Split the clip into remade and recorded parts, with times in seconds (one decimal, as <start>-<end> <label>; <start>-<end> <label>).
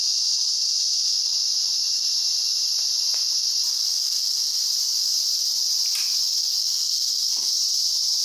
0.0-3.7 recorded; 3.7-4.6 remade; 4.6-6.3 recorded; 6.3-7.6 remade; 7.6-8.2 recorded